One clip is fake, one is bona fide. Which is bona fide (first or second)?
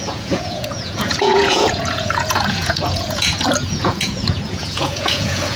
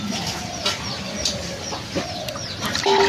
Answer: second